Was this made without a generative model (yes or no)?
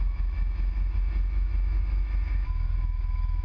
no